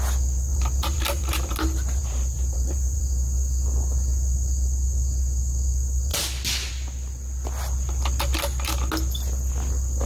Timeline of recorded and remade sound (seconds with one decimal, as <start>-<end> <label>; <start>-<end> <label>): 0.0-0.5 recorded; 0.5-3.0 remade; 3.0-10.1 recorded